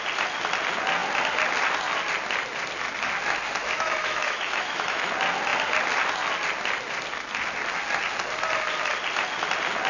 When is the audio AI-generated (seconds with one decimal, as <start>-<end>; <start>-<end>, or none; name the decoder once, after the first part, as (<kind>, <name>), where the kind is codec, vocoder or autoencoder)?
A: 3.6-5.1 (autoencoder, DAC-VAE)